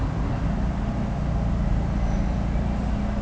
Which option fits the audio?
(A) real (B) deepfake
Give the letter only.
A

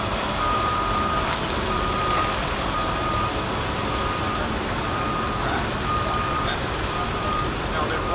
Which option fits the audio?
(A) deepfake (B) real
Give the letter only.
A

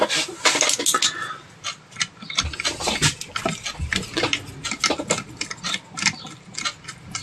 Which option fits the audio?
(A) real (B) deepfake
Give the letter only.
A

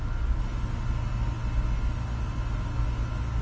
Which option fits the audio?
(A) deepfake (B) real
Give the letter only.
B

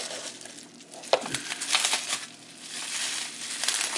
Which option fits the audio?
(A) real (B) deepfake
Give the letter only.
A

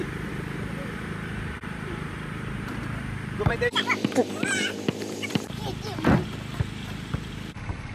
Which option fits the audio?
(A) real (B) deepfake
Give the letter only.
B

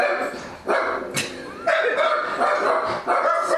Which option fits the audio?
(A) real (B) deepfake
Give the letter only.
A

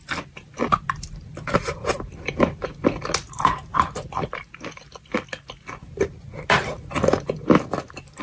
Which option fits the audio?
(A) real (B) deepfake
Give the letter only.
A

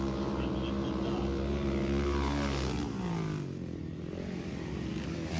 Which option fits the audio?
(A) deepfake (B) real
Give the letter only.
B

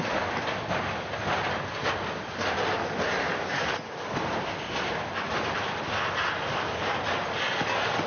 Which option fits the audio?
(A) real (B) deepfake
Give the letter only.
A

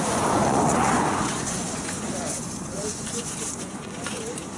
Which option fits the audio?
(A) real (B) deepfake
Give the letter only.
B